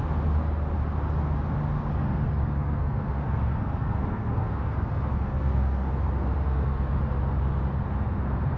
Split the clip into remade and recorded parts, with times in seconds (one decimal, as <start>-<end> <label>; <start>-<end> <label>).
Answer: 0.0-2.0 recorded; 2.0-7.0 remade; 7.0-8.6 recorded